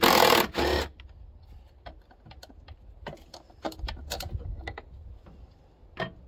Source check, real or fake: real